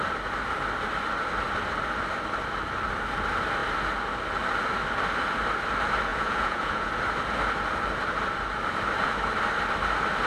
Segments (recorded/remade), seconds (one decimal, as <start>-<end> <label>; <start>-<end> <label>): 0.0-6.1 recorded; 6.1-6.9 remade; 6.9-10.3 recorded